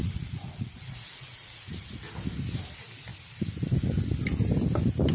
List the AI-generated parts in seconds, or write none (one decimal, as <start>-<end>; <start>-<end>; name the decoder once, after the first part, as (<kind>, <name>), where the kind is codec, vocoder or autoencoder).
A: 0.0-1.6 (vocoder, Vocos)